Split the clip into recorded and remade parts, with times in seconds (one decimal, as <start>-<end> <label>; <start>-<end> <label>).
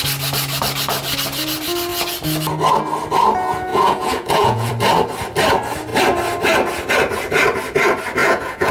0.0-3.7 recorded; 3.7-4.7 remade; 4.7-8.2 recorded; 8.2-8.7 remade